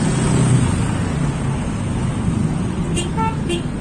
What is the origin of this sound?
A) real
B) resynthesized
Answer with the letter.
A